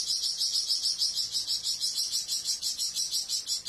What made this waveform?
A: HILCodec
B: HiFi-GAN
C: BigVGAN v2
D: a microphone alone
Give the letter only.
D